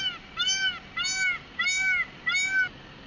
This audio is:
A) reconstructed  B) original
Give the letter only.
B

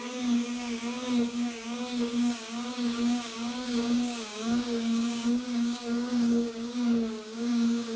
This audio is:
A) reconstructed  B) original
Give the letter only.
A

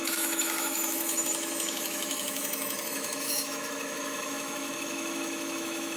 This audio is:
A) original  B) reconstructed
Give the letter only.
B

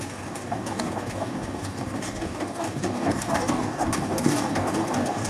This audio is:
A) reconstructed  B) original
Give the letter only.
A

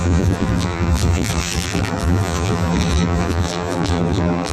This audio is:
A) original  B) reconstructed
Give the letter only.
B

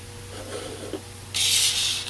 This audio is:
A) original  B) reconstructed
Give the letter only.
A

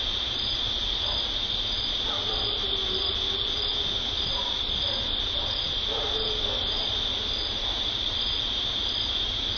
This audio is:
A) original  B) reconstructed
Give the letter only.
A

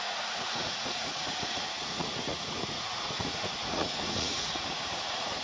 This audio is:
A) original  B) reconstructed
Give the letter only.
B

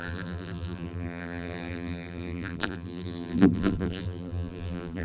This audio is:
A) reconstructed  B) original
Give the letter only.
A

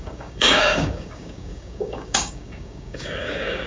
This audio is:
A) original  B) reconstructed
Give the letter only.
B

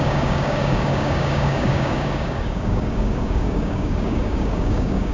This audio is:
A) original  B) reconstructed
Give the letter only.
B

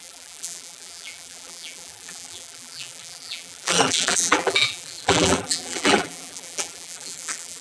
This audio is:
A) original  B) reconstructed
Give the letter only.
B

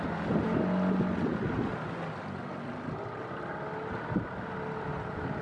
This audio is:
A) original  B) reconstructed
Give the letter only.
A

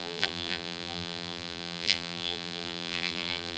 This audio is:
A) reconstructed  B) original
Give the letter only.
A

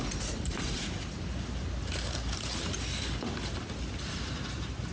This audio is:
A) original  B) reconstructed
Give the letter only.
A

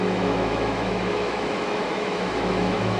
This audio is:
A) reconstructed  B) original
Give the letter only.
A